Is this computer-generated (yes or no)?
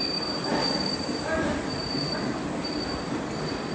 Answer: no